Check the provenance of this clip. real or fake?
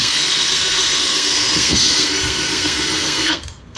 fake